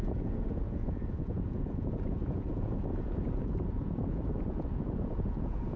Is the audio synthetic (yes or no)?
yes